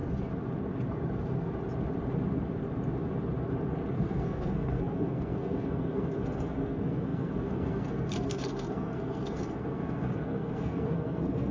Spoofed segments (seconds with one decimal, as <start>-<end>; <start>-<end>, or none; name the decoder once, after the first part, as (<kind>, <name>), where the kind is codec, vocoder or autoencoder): 3.9-11.5 (codec, SNAC)